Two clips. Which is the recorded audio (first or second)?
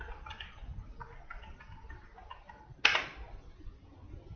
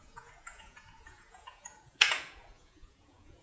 first